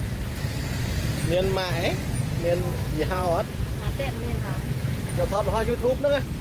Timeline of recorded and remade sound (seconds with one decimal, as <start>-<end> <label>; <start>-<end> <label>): 0.0-3.0 recorded; 3.0-3.7 remade; 3.7-4.8 recorded; 4.8-5.8 remade; 5.8-6.4 recorded